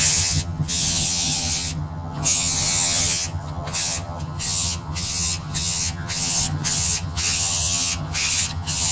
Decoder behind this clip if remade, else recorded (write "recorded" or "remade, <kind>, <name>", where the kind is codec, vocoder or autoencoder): remade, vocoder, HiFi-GAN